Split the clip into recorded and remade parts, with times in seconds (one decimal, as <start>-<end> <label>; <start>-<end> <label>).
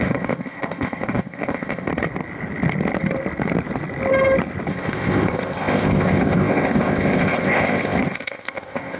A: 0.0-1.9 remade; 1.9-4.7 recorded; 4.7-9.0 remade